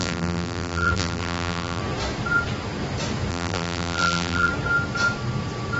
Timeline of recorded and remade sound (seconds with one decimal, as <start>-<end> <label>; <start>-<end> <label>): 0.0-1.8 remade; 1.8-3.3 recorded; 3.3-4.5 remade; 4.5-5.8 recorded